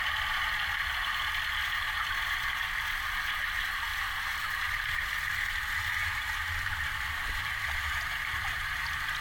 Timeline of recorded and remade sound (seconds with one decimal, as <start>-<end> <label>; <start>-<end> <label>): 0.0-3.9 recorded; 3.9-5.3 remade; 5.3-6.0 recorded; 6.0-7.9 remade; 7.9-9.2 recorded